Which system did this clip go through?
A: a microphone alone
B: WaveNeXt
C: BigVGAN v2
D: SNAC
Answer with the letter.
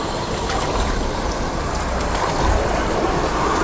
C